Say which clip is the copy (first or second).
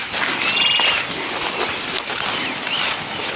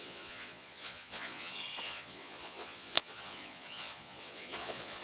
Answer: second